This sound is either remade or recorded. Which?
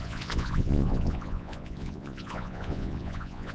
remade